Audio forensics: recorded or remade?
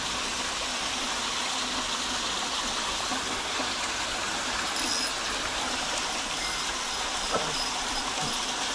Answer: recorded